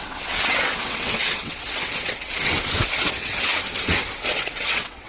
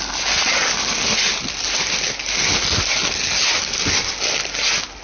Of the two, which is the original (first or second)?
second